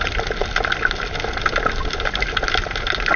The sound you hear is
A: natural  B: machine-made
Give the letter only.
A